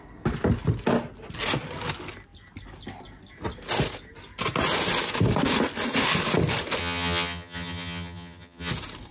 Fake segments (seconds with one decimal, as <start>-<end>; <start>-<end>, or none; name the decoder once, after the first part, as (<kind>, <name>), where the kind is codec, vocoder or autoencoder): 6.8-8.7 (vocoder, HiFi-GAN)